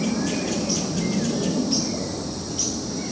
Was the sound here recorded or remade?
remade